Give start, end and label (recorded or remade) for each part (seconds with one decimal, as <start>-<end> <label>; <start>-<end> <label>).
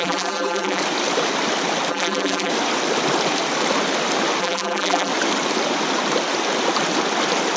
0.0-0.8 remade; 0.8-1.9 recorded; 1.9-2.5 remade; 2.5-4.4 recorded; 4.4-5.1 remade; 5.1-7.6 recorded